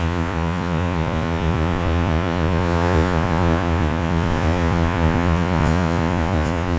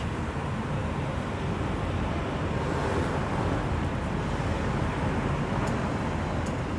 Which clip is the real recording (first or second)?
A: second